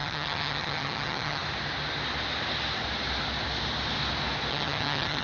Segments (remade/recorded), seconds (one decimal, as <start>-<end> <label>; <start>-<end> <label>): 0.0-1.4 remade; 1.4-4.5 recorded; 4.5-5.2 remade